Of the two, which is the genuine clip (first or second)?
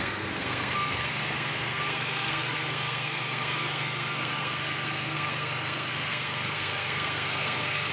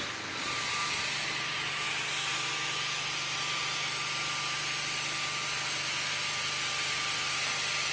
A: second